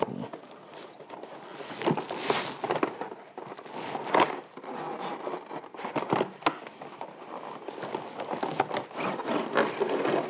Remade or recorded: recorded